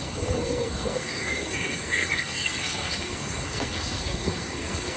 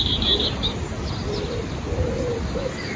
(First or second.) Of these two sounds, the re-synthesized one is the first